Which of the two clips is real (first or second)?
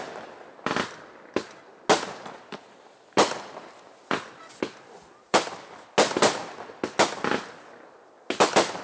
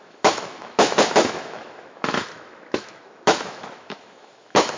first